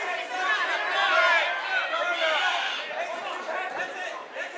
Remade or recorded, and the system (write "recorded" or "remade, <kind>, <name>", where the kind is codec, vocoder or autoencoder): recorded